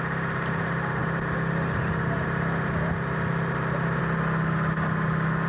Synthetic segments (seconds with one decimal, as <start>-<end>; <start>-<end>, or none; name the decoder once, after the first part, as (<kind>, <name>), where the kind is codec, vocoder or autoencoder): none